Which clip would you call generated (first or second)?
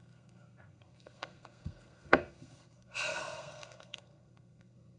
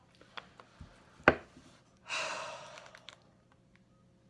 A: first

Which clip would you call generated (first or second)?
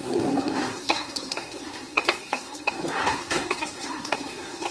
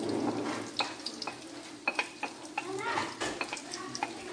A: first